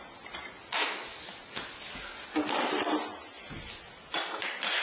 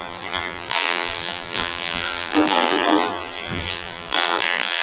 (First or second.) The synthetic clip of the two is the second